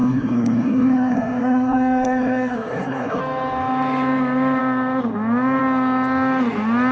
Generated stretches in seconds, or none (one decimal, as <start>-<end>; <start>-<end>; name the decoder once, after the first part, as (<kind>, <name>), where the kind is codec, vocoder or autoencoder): 0.0-3.2 (codec, SNAC)